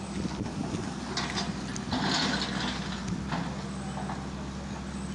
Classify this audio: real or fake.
real